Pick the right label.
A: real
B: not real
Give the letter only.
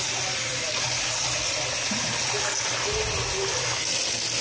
A